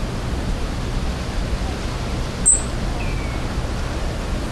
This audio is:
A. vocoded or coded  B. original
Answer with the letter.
B